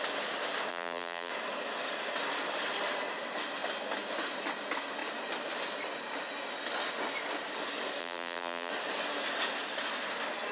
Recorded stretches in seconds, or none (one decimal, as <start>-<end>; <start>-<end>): 0.0-0.7; 1.3-8.0; 8.7-10.5